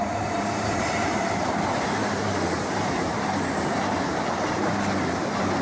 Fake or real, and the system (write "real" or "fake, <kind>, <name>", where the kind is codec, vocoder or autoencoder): fake, vocoder, BigVGAN v2